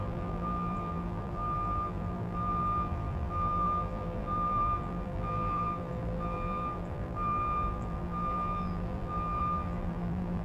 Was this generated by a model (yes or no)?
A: yes